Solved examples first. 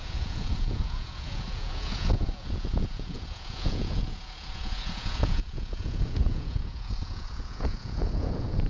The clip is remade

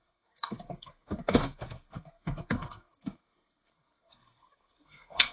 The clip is remade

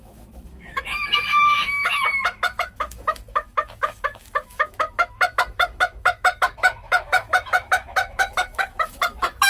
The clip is remade